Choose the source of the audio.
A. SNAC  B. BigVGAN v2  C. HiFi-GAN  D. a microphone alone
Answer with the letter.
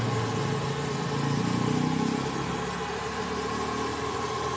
D